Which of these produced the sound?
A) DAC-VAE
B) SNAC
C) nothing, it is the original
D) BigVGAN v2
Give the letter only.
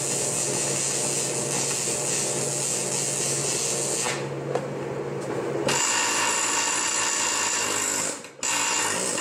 C